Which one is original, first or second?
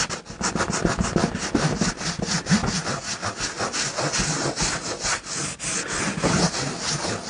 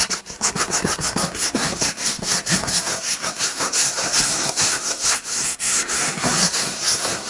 first